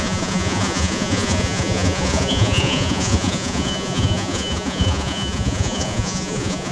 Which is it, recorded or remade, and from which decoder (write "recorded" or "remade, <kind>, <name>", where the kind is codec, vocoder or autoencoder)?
remade, vocoder, Vocos